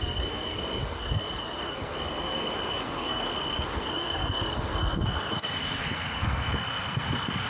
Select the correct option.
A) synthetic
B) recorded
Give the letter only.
A